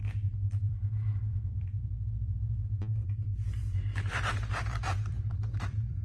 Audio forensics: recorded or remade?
remade